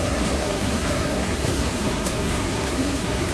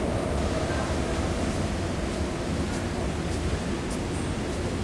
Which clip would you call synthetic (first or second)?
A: first